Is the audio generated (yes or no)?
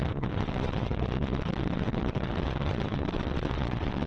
yes